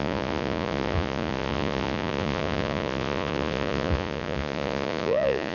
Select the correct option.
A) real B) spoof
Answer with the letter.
B